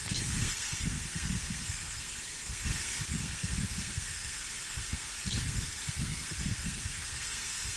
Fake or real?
fake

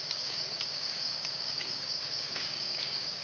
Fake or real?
fake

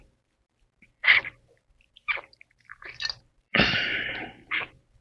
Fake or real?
fake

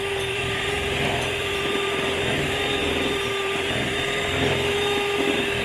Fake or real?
fake